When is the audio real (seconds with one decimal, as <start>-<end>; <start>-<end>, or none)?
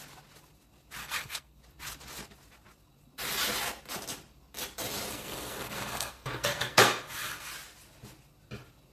0.0-1.0; 1.6-5.1; 7.5-8.9